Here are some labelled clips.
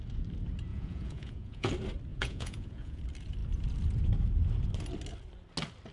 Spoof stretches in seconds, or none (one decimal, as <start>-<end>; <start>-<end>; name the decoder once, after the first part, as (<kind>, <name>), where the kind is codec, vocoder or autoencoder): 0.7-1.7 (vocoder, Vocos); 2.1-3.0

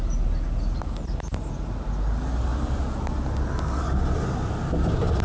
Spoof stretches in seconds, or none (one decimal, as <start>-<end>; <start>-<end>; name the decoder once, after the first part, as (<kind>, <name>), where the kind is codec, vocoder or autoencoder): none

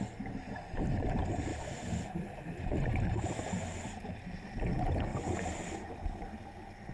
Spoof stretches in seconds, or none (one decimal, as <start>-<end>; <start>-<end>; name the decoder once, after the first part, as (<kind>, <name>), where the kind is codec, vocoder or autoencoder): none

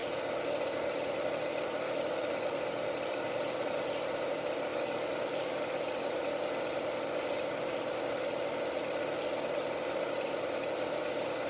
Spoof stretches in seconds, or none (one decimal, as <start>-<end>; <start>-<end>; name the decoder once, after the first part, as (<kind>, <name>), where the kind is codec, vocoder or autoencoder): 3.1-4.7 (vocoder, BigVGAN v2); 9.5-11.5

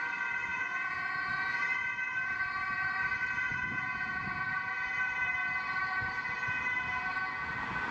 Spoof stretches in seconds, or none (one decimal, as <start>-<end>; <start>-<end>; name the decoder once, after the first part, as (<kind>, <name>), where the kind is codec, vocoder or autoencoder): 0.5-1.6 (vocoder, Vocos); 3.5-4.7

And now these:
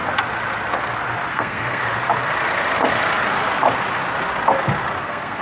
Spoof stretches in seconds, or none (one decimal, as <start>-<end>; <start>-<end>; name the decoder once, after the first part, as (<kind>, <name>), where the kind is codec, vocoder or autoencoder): 1.3-1.8 (codec, SNAC); 5.0-5.4